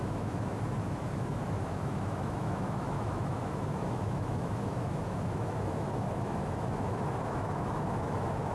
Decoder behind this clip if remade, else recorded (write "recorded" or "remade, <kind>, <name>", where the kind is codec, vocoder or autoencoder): remade, autoencoder, DAC-VAE